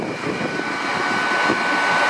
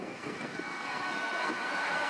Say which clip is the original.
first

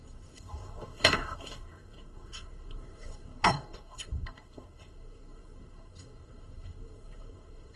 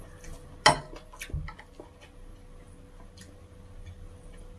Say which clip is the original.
second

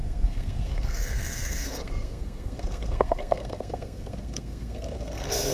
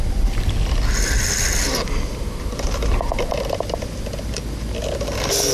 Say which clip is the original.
second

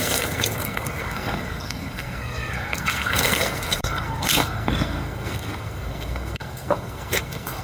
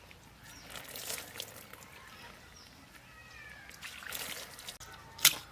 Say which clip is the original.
second